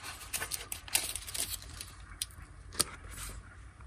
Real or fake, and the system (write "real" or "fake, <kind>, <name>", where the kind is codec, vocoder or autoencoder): fake, vocoder, BigVGAN v2